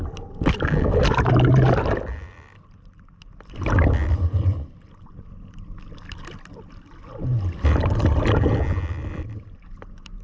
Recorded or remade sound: recorded